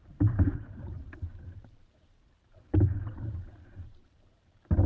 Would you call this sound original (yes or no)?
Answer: no